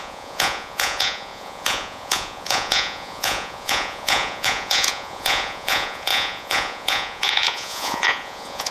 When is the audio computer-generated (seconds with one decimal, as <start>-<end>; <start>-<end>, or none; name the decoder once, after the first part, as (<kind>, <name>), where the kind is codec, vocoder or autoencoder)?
0.0-8.7 (vocoder, Vocos)